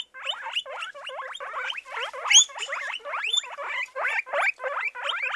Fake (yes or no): no